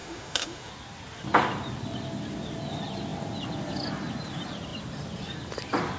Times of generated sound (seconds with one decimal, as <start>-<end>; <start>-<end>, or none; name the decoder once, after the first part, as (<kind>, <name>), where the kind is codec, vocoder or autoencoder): 0.0-0.7 (autoencoder, DAC-VAE)